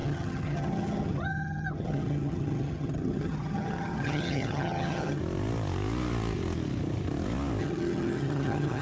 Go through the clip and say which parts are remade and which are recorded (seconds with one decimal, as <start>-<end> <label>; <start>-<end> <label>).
0.0-5.2 remade; 5.2-7.6 recorded; 7.6-8.8 remade